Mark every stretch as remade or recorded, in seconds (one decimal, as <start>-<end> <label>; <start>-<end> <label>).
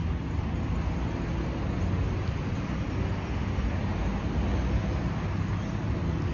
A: 0.0-6.3 recorded